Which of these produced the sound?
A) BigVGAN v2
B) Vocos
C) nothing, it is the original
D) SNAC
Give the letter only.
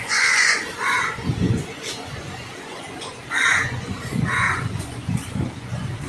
B